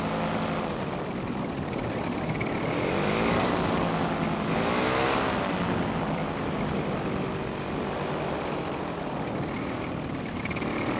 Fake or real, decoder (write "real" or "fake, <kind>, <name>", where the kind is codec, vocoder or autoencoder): real